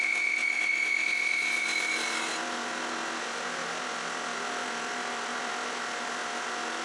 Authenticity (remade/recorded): recorded